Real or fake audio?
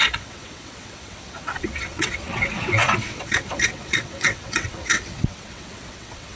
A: fake